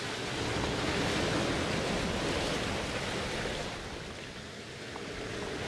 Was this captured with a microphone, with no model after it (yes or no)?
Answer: yes